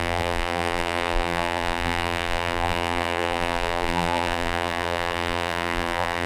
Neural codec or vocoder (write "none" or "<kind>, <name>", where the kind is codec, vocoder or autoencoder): vocoder, BigVGAN v2